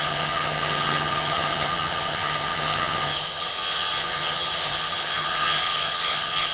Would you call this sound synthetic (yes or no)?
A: yes